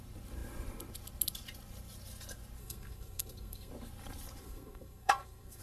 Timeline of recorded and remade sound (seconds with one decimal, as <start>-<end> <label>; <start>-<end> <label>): 0.0-2.6 recorded; 2.6-3.7 remade; 3.7-4.4 recorded; 4.4-5.6 remade